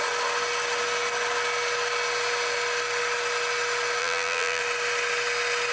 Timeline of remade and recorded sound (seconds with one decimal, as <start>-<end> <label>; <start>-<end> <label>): 0.0-4.0 recorded; 4.0-4.6 remade; 4.6-5.7 recorded